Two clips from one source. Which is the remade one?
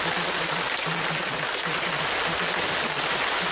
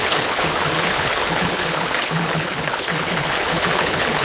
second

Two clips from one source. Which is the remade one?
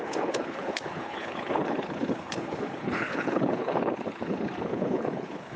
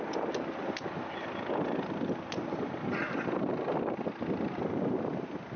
first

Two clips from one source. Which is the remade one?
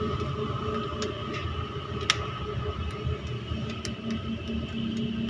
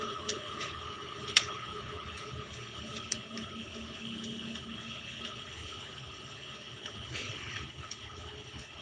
second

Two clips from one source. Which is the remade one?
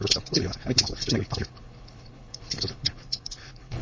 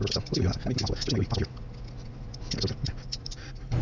first